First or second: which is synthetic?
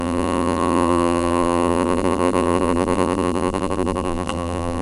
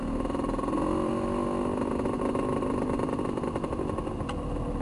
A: first